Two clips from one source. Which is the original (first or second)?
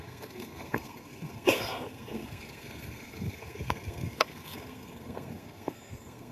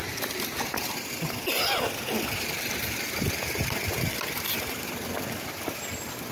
second